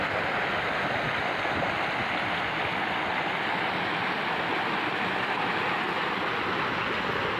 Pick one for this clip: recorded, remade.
recorded